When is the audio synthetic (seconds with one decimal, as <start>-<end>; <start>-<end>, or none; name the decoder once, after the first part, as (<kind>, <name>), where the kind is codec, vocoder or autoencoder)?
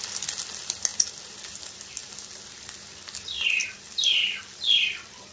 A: none